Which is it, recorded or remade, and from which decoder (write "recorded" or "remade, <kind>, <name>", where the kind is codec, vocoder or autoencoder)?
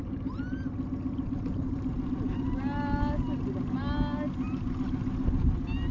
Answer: recorded